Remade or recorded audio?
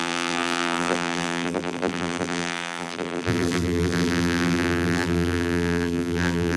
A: remade